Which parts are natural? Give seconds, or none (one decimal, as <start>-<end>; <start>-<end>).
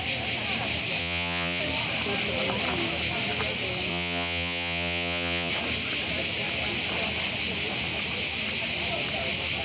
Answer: 0.0-1.0; 1.6-3.9; 5.5-9.6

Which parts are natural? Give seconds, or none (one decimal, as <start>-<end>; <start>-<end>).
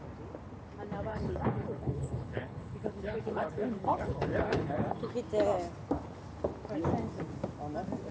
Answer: 0.0-1.1; 5.1-8.1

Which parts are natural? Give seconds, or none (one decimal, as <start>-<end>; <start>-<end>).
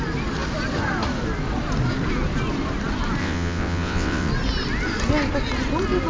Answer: 0.0-3.2; 4.3-6.1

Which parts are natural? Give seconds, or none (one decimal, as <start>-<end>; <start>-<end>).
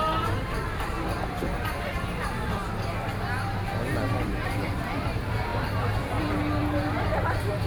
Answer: 2.6-4.1; 5.5-6.0; 6.6-7.3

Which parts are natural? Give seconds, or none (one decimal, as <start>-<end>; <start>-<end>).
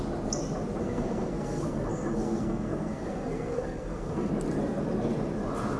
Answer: 0.0-0.8; 4.3-5.8